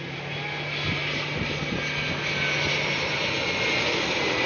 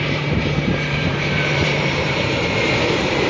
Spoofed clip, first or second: second